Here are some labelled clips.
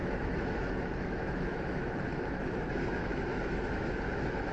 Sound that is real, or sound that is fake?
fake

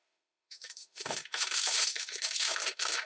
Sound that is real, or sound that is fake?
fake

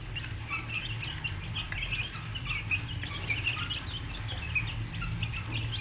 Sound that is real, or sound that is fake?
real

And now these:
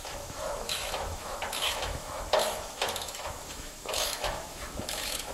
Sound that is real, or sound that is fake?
fake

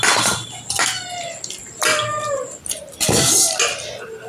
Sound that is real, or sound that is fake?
real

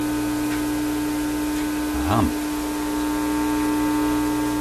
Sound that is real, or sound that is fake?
real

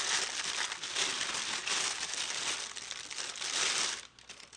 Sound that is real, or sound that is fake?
real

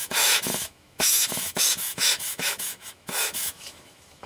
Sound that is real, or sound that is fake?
fake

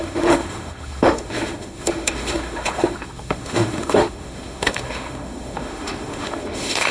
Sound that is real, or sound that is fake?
fake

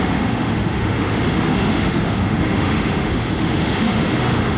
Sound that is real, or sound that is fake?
fake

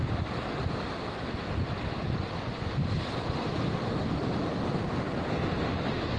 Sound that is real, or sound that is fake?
real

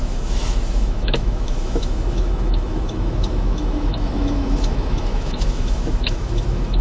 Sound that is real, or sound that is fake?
fake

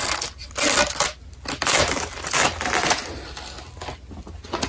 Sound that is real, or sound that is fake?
real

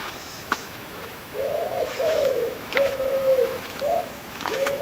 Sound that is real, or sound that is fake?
fake